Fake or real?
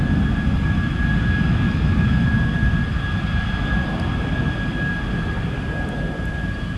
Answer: real